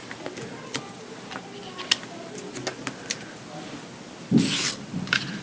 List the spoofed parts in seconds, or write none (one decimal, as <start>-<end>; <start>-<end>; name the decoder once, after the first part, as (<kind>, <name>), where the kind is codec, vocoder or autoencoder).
none